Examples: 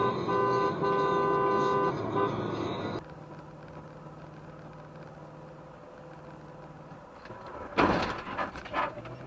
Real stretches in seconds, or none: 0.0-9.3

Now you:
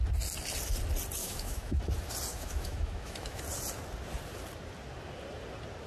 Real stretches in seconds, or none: 0.0-1.2; 1.8-2.3; 3.4-5.9

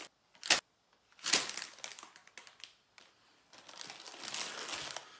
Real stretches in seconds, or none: 0.0-5.2

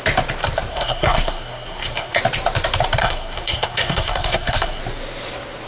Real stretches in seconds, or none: 0.0-0.7; 2.2-3.0; 4.8-5.7

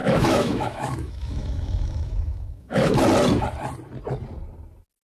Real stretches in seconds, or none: 3.0-5.0

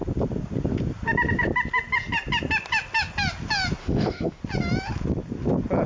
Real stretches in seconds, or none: 0.0-3.8; 4.4-5.9